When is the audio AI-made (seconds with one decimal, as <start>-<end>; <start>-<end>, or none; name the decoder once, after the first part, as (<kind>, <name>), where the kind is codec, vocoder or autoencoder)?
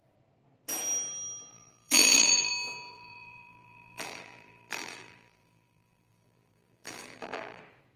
1.5-2.5 (vocoder, BigVGAN v2); 2.9-7.6